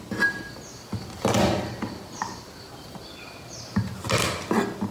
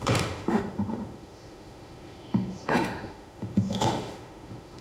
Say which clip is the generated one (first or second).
second